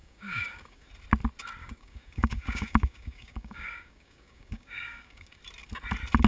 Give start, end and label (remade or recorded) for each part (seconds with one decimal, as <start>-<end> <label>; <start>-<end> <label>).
0.0-0.9 remade; 0.9-1.6 recorded; 1.6-5.4 remade; 5.4-6.3 recorded